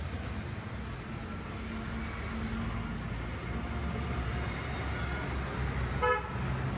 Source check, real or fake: real